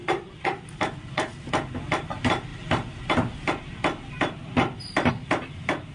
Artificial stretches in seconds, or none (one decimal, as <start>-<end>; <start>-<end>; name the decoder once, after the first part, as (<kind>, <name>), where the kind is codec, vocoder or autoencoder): 0.0-1.5 (vocoder, BigVGAN v2); 2.5-5.1